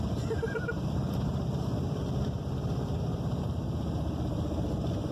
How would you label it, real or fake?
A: fake